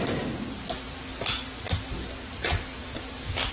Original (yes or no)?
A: yes